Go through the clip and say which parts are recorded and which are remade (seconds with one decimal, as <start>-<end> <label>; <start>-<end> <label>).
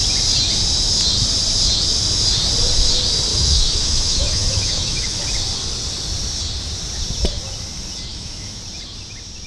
0.0-3.3 recorded; 3.3-5.2 remade; 5.2-8.1 recorded; 8.1-8.6 remade; 8.6-9.5 recorded